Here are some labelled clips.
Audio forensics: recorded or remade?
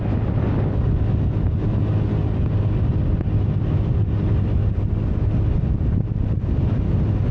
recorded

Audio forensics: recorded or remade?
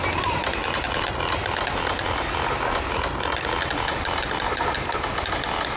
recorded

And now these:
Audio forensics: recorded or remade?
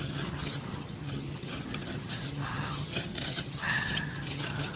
remade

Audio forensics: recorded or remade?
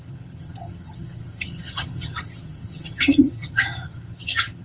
remade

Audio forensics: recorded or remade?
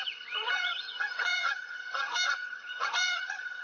remade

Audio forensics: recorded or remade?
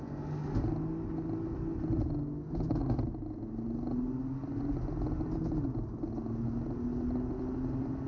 recorded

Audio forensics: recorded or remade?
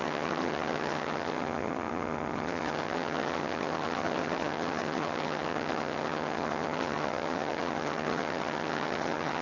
remade